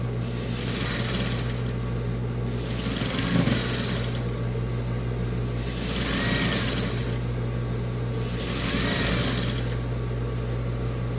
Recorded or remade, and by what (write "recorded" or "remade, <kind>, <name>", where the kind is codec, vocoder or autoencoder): recorded